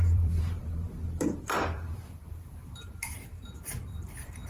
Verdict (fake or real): fake